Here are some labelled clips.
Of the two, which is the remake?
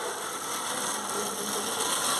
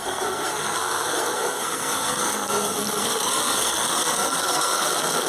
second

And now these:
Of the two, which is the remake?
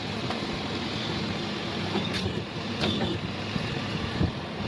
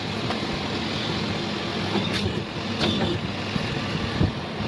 first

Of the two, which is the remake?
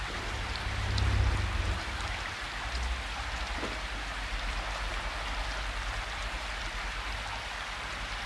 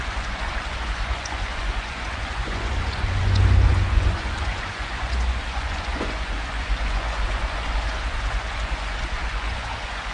second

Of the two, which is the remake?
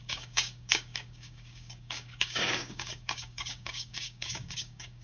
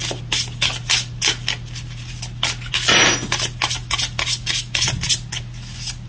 first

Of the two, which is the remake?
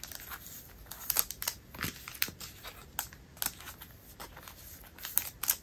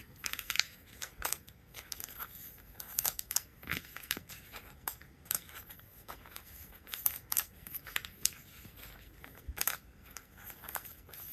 second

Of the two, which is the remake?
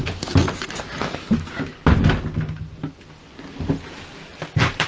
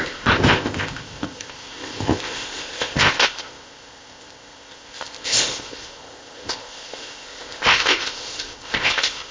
second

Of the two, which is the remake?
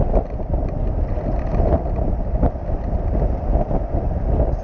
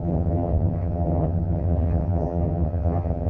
second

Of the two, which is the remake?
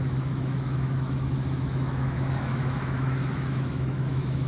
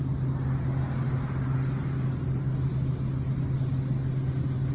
first